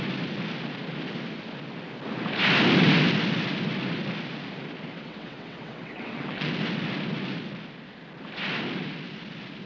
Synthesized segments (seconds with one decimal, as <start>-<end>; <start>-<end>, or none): 4.9-6.5